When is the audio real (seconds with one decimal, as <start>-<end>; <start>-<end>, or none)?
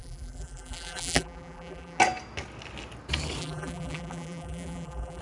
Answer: 2.0-3.4